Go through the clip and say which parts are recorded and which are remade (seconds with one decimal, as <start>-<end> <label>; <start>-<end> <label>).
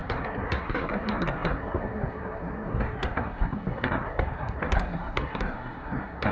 0.0-6.3 remade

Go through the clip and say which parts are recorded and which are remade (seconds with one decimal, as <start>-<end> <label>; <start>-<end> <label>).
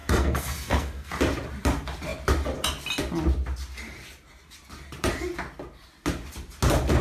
0.0-1.1 remade; 1.1-7.0 recorded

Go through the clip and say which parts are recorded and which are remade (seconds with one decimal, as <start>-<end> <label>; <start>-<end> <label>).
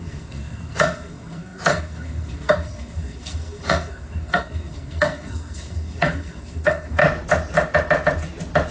0.0-7.0 remade; 7.0-8.7 recorded